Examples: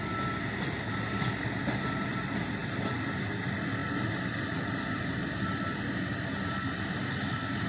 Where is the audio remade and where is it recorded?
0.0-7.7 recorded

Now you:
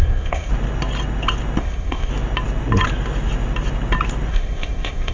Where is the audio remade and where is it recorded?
0.0-0.5 remade; 0.5-1.6 recorded; 1.6-2.1 remade; 2.1-4.3 recorded; 4.3-5.1 remade

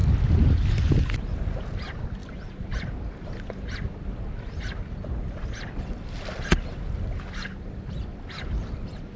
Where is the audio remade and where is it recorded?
0.0-9.2 recorded

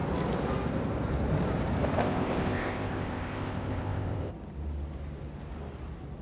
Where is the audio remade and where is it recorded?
0.0-2.0 recorded; 2.0-4.3 remade; 4.3-6.2 recorded

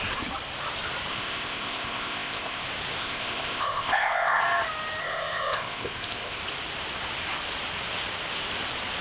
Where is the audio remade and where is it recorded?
0.0-1.1 recorded; 1.1-2.6 remade; 2.6-3.0 recorded; 3.0-4.4 remade; 4.4-5.0 recorded; 5.0-6.4 remade; 6.4-9.0 recorded

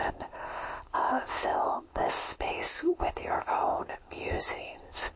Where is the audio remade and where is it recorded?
0.0-5.2 remade

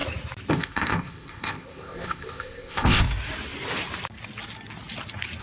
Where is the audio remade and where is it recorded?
0.0-0.5 recorded; 0.5-3.0 remade; 3.0-5.4 recorded